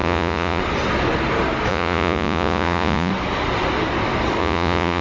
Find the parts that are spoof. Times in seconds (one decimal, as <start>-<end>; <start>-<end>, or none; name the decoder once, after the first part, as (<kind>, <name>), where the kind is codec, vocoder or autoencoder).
0.0-0.6 (vocoder, Vocos); 1.7-3.1; 4.4-5.0